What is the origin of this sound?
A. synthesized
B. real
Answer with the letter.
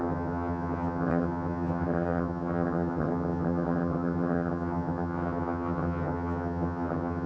A